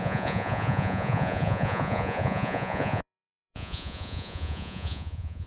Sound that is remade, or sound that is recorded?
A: remade